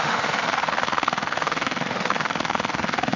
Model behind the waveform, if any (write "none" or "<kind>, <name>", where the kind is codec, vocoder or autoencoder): autoencoder, DAC-VAE